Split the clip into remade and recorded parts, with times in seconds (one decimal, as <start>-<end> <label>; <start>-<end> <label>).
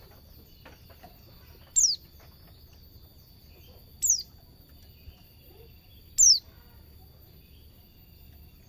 0.0-8.7 recorded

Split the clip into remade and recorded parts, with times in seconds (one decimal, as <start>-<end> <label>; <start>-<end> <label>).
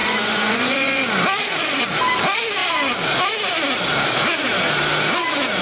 0.0-1.0 remade; 1.0-5.6 recorded